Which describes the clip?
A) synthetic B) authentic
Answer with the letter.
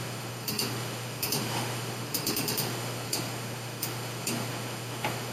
A